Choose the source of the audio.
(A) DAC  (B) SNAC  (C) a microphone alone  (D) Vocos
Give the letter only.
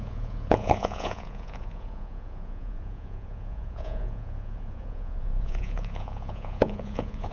D